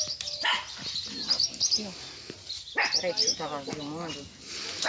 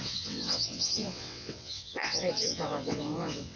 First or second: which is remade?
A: second